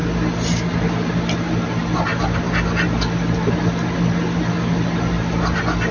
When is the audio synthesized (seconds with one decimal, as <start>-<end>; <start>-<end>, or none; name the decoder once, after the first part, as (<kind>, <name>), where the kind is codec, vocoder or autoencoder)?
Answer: none